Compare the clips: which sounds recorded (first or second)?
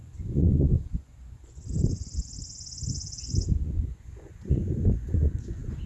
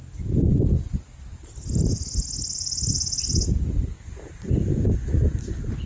second